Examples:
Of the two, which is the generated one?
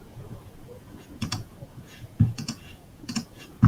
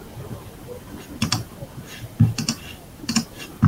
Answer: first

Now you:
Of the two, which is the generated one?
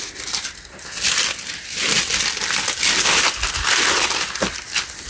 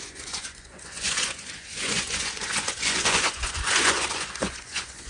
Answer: second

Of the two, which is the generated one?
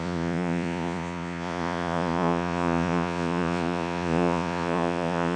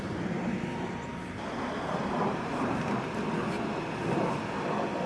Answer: first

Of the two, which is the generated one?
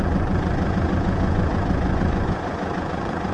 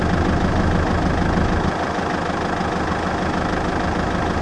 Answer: first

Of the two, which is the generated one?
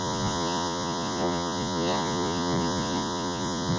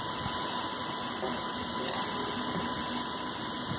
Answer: first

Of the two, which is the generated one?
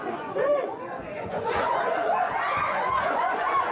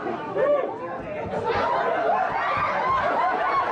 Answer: first